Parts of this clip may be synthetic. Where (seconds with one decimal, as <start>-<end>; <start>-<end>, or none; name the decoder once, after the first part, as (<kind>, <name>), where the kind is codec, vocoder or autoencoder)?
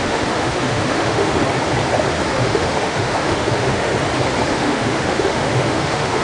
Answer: 0.0-1.4 (autoencoder, DAC-VAE); 2.3-3.9; 4.5-6.2